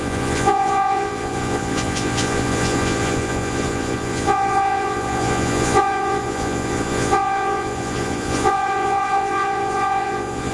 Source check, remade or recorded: remade